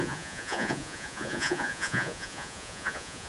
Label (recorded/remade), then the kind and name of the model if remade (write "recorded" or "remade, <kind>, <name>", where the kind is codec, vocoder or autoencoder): remade, vocoder, Vocos